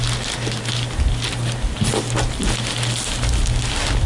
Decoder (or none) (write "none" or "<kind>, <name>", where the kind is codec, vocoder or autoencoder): none